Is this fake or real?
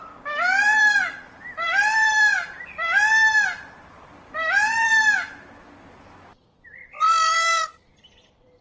fake